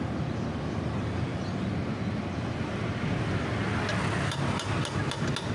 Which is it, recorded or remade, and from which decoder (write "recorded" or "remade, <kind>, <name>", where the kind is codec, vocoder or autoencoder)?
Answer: recorded